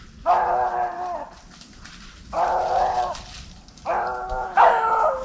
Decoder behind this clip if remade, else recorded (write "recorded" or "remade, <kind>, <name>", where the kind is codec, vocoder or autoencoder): recorded